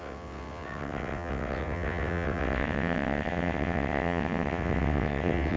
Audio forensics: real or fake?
fake